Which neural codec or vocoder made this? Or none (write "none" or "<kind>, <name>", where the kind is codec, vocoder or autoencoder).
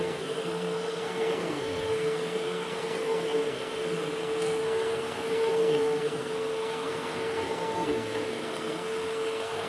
codec, SNAC